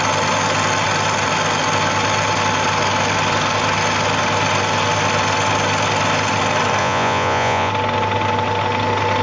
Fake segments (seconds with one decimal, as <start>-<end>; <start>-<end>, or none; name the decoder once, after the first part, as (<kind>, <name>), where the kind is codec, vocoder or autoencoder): 6.8-7.7 (vocoder, Vocos)